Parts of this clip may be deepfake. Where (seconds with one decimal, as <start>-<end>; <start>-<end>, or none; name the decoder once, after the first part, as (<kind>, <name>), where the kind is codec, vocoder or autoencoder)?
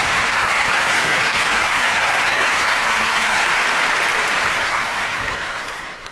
0.0-3.5 (codec, SNAC); 4.5-6.1